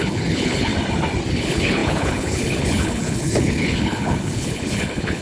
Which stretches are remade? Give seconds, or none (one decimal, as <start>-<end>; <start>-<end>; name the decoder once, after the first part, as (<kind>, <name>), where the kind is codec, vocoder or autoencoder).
0.0-0.7 (codec, HILCodec); 1.3-5.2